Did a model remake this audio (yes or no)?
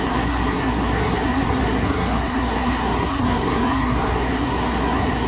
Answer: yes